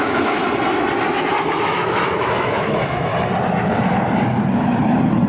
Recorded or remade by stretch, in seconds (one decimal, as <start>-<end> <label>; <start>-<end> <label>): 0.0-0.4 remade; 0.4-1.1 recorded; 1.1-3.1 remade; 3.1-5.3 recorded